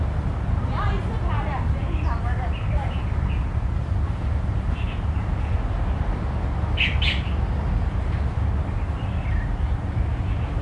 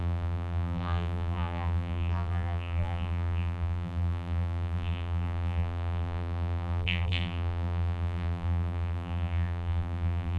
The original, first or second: first